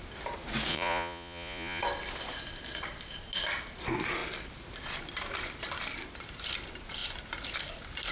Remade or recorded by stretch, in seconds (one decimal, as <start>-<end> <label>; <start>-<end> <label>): 0.0-0.7 recorded; 0.7-1.8 remade; 1.8-8.1 recorded